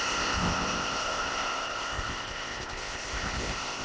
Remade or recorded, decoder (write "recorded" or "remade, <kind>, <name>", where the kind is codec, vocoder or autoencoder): remade, codec, ZipCodec